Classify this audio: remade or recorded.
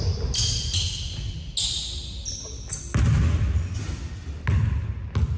recorded